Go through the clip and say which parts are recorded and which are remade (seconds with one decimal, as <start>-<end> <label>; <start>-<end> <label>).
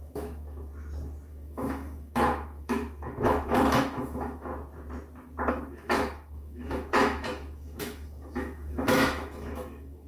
0.0-0.7 remade; 0.7-1.3 recorded; 1.3-4.5 remade; 4.5-5.5 recorded; 5.5-10.1 remade